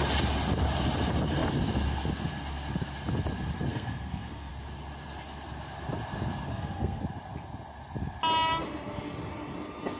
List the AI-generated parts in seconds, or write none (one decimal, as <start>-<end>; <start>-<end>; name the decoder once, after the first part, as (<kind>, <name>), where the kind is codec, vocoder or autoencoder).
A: 3.7-4.5 (codec, SNAC); 6.5-7.0